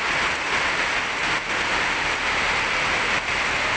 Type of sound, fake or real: real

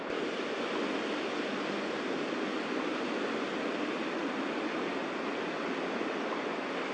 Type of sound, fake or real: real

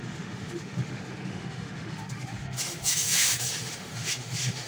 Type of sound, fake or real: fake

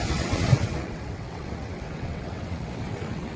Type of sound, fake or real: fake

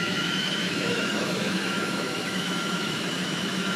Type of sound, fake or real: fake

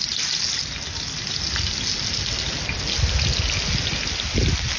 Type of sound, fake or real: real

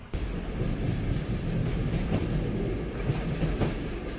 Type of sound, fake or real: real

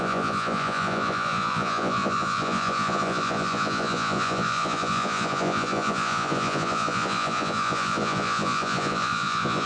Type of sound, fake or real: fake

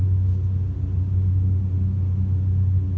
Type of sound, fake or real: real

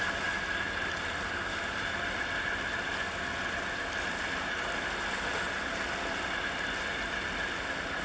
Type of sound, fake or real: real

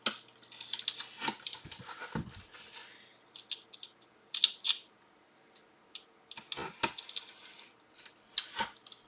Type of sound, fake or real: real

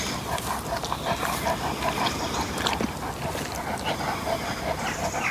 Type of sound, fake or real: real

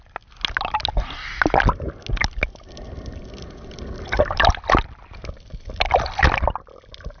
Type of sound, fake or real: real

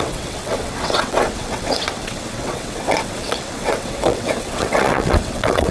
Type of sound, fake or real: fake